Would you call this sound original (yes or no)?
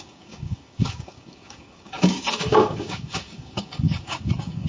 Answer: no